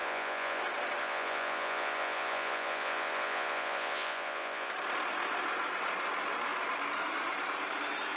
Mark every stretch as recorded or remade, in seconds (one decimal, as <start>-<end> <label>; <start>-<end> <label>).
0.0-0.6 remade; 0.6-1.0 recorded; 1.0-4.7 remade; 4.7-8.2 recorded